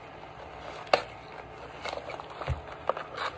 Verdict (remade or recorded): recorded